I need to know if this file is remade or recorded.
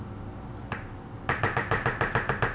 recorded